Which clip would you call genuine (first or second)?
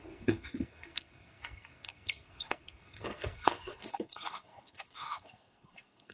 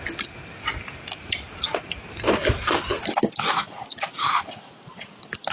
second